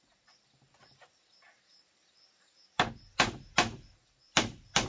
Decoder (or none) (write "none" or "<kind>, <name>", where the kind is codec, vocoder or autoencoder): none